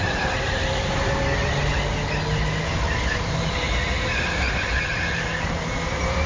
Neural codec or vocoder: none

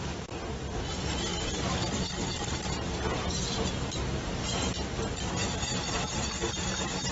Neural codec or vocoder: none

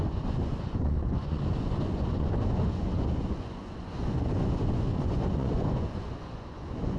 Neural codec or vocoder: vocoder, Vocos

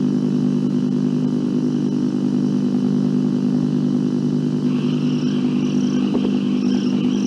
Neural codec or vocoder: none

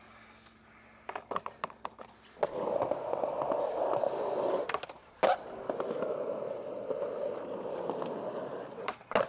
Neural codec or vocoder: none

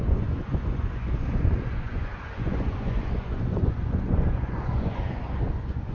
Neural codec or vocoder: vocoder, Vocos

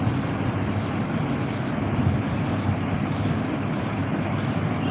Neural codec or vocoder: none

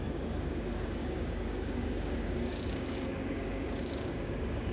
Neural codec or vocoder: codec, DAC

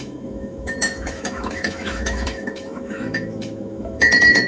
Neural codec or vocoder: autoencoder, DAC-VAE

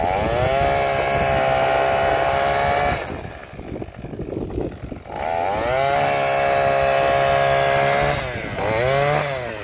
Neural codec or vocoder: none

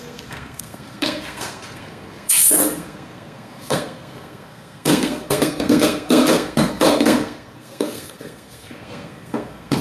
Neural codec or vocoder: codec, SNAC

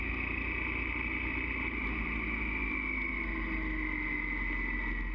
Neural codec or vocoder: none